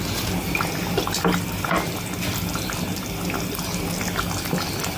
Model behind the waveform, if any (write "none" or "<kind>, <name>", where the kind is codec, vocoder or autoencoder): none